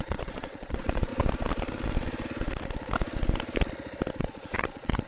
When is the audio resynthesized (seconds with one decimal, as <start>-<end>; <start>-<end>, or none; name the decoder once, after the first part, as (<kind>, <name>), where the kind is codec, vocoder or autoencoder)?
0.0-1.1 (vocoder, Vocos); 4.2-5.1